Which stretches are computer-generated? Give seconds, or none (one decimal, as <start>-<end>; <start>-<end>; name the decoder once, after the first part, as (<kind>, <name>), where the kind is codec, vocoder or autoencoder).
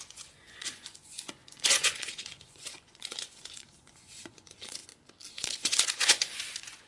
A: 0.0-4.8 (vocoder, Vocos); 5.3-6.9